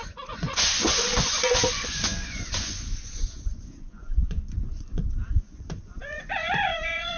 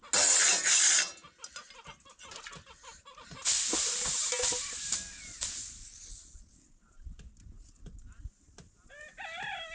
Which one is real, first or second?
second